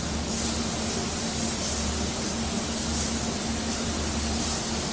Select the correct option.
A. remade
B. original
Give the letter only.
B